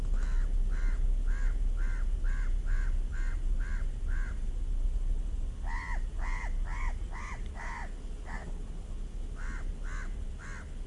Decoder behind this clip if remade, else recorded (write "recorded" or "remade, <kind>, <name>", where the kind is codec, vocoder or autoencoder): recorded